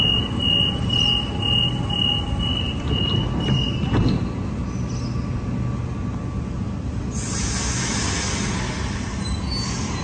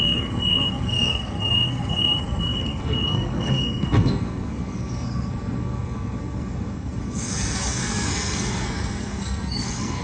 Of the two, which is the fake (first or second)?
second